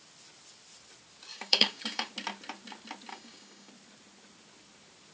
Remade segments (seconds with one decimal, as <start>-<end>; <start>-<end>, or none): 1.3-2.1; 3.1-3.7